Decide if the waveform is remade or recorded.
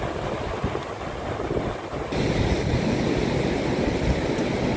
recorded